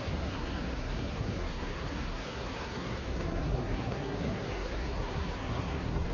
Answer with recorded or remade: remade